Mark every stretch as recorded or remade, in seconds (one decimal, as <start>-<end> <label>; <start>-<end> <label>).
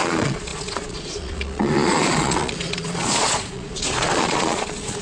0.0-5.0 remade